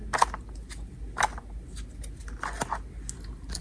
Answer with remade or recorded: recorded